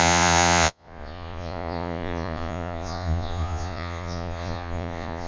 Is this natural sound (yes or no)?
no